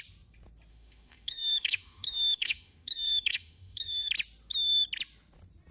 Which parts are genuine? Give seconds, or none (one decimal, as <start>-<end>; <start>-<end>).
0.0-0.7; 4.1-5.7